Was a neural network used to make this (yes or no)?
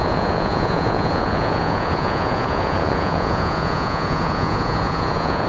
yes